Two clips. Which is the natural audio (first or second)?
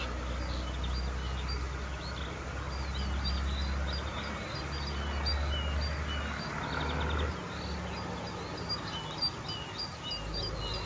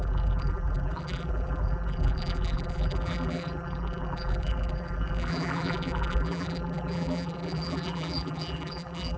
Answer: first